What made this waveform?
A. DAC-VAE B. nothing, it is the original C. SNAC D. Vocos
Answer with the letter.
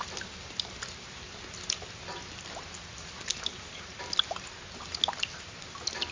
B